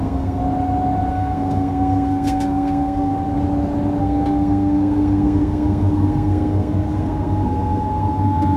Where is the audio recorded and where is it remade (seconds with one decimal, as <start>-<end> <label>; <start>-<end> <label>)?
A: 0.0-0.4 remade; 0.4-1.1 recorded; 1.1-3.1 remade; 3.1-4.0 recorded; 4.0-8.6 remade